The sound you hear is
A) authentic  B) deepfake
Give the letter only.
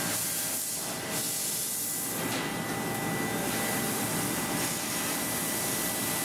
A